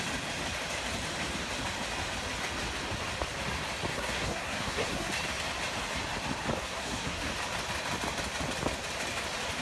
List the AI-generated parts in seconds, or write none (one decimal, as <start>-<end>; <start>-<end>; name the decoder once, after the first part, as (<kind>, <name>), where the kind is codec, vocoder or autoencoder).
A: 3.9-5.1 (codec, SNAC); 6.6-7.3